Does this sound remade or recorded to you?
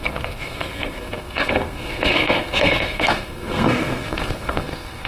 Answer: remade